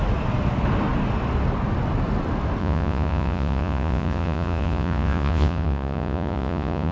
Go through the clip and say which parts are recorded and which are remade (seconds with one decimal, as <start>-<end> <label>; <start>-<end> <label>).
0.0-2.6 recorded; 2.6-6.9 remade